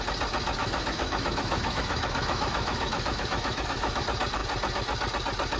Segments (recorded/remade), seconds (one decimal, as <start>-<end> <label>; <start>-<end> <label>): 0.0-0.6 recorded; 0.6-4.0 remade; 4.0-5.6 recorded